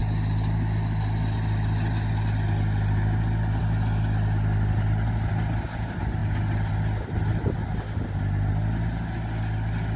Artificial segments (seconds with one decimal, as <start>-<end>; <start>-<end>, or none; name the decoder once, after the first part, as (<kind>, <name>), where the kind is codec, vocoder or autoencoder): none